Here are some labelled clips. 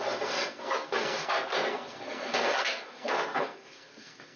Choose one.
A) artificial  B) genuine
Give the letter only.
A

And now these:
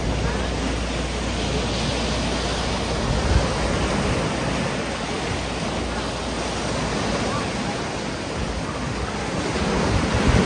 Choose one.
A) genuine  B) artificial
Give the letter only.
A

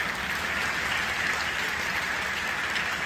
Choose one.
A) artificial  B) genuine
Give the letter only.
B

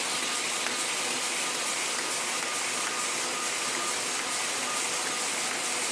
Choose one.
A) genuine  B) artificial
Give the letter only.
A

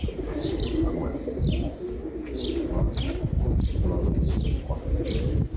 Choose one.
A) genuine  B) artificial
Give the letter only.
A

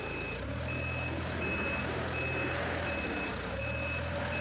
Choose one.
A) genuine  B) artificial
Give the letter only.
A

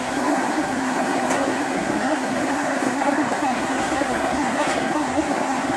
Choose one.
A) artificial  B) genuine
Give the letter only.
A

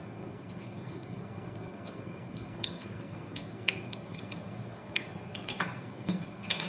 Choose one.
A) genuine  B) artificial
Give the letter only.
B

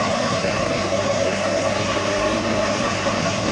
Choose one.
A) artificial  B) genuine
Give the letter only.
A